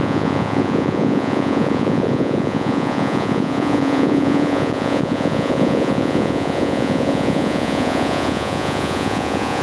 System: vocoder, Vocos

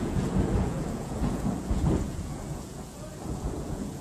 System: vocoder, Vocos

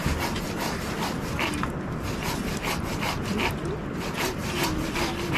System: none